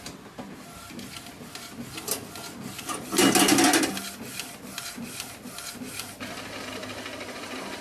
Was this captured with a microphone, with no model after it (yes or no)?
yes